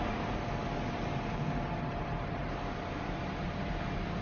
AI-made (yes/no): no